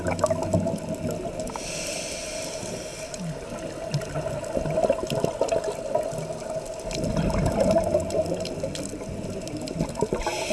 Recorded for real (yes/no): yes